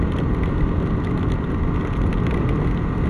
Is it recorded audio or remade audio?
recorded